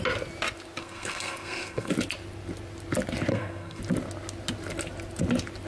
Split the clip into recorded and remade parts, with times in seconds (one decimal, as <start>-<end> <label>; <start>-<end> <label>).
0.0-0.8 recorded; 0.8-1.9 remade; 1.9-3.3 recorded; 3.3-3.8 remade; 3.8-5.7 recorded